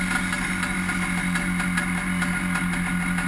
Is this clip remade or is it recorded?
recorded